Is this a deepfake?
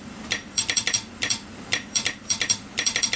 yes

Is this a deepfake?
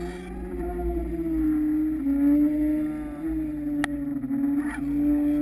no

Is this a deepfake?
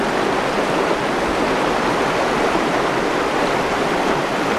no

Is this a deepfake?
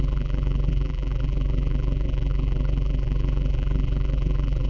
yes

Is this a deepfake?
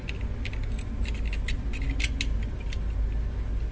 no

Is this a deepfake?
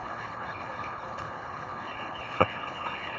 yes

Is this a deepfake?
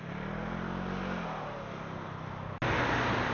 no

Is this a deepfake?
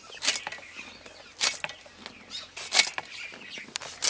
no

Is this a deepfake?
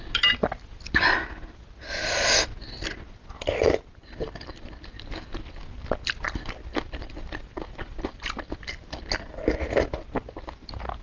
no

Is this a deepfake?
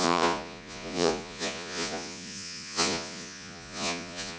yes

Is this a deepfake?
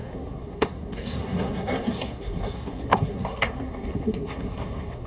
yes